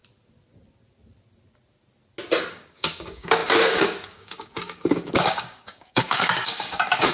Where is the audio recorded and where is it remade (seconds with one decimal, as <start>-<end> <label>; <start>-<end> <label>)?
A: 0.0-2.5 recorded; 2.5-7.1 remade